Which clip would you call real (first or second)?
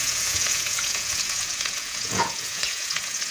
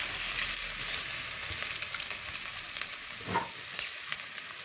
second